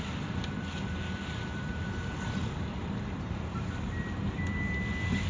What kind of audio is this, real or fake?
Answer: real